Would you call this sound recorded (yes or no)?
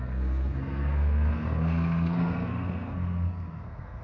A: no